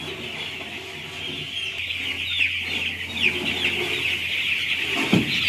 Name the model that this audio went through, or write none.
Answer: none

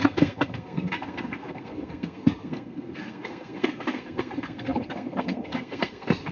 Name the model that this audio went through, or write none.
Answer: codec, SNAC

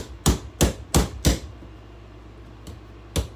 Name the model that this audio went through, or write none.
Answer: none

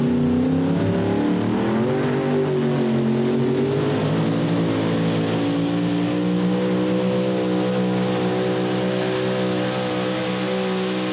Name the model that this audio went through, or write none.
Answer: none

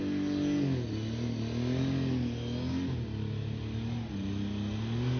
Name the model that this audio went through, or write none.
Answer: none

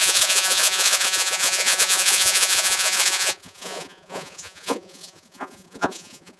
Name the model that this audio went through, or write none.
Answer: vocoder, Vocos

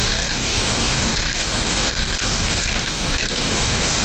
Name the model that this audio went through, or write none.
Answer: codec, DAC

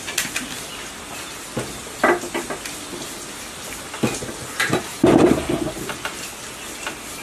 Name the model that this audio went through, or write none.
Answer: none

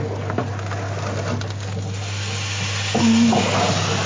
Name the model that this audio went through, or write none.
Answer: none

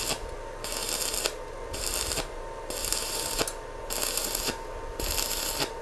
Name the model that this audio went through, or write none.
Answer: none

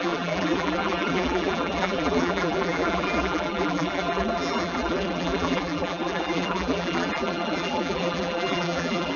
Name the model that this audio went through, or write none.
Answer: vocoder, BigVGAN v2